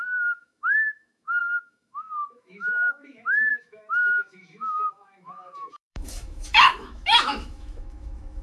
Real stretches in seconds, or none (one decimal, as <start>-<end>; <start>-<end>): none